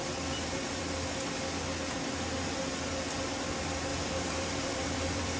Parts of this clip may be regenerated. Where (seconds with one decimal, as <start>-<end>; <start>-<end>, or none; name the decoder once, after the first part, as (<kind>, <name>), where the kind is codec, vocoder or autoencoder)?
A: 0.0-1.5 (vocoder, BigVGAN v2); 3.9-5.4